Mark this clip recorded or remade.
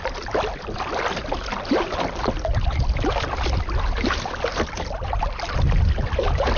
recorded